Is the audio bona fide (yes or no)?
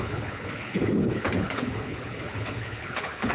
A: no